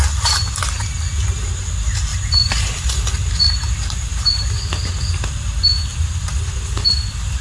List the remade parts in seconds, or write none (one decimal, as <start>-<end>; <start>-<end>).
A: 2.1-2.9; 5.9-6.9